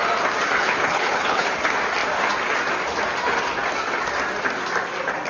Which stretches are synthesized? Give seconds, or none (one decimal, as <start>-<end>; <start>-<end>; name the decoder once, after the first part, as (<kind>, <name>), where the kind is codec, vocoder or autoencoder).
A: 0.6-1.5 (codec, HILCodec)